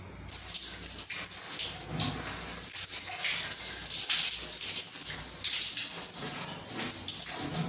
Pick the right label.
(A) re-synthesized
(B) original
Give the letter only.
B